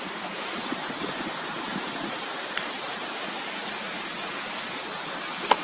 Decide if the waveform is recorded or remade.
remade